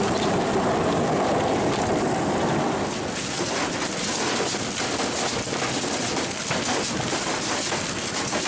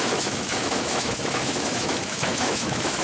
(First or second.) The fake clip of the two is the second